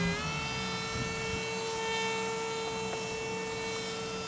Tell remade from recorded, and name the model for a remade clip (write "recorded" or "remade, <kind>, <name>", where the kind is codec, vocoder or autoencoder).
recorded